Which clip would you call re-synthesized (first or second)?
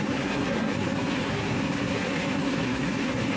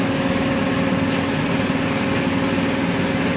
first